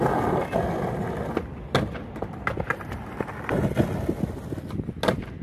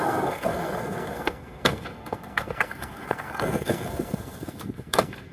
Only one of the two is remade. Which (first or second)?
second